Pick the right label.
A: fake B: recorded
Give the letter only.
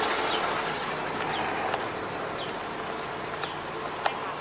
B